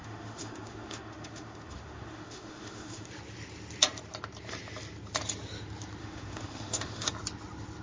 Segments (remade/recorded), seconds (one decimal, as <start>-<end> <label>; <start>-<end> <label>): 0.0-3.1 remade; 3.1-6.0 recorded; 6.0-7.1 remade; 7.1-7.8 recorded